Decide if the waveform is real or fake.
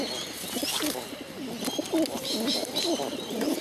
real